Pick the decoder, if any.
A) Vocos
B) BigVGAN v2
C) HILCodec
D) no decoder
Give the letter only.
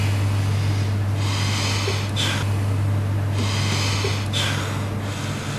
D